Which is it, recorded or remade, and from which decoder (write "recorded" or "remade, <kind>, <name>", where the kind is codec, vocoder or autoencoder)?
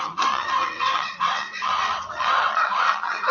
remade, vocoder, WaveNeXt